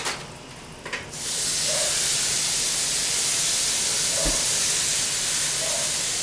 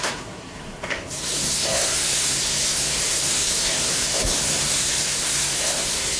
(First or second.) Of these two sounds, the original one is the first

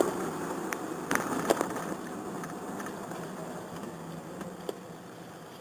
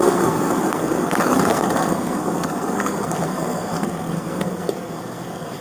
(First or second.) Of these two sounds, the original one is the first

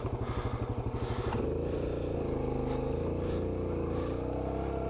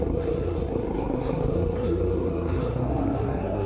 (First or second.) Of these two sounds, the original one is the first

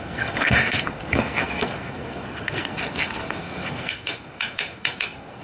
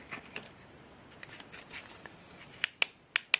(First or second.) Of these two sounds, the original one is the second